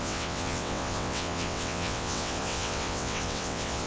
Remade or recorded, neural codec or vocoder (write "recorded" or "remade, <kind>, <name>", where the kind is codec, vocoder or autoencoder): remade, vocoder, WaveNeXt